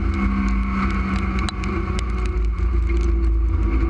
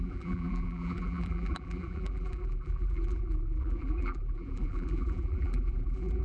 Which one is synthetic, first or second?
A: second